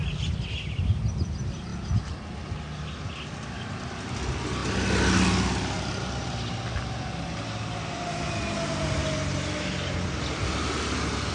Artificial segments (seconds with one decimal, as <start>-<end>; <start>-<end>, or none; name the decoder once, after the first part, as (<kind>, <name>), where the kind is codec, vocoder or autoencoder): none